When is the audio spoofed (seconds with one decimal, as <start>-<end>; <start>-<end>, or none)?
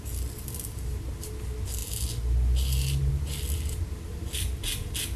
none